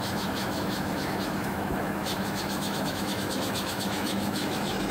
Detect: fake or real fake